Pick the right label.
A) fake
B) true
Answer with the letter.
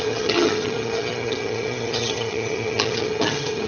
A